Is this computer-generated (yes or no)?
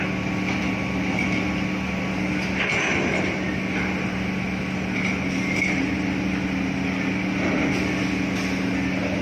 no